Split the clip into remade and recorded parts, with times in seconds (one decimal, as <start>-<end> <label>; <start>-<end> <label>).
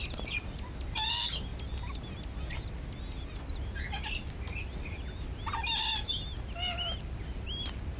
0.0-8.0 recorded